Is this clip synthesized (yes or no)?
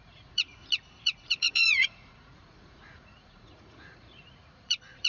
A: yes